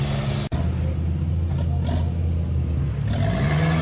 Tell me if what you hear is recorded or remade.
recorded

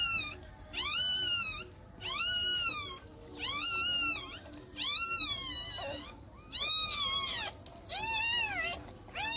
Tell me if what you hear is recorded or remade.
recorded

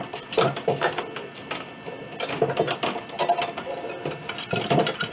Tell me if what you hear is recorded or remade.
recorded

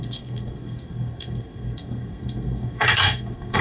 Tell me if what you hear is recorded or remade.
remade